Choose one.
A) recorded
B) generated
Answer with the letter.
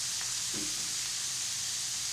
B